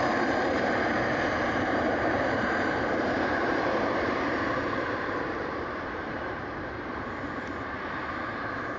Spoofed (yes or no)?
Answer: yes